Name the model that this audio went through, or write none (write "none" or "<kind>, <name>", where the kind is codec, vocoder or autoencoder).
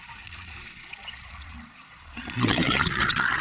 vocoder, Vocos